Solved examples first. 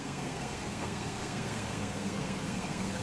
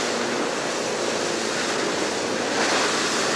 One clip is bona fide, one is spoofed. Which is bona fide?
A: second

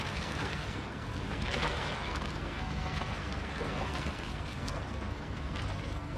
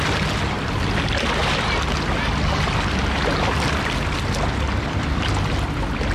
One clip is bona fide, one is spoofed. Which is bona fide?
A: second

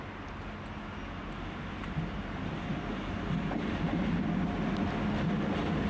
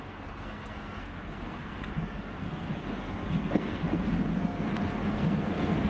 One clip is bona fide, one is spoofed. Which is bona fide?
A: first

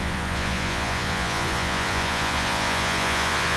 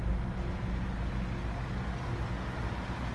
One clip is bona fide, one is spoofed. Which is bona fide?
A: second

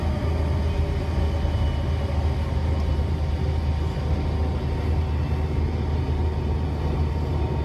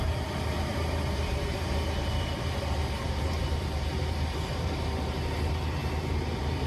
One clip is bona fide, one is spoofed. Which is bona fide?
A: first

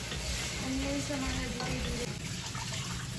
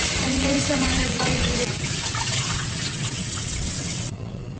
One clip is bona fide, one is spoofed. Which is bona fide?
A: first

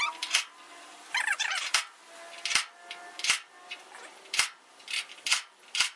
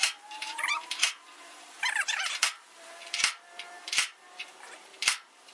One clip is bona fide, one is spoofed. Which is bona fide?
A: first